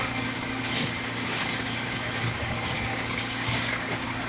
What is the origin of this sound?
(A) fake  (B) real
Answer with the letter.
A